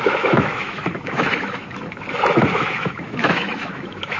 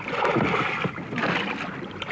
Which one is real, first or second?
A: second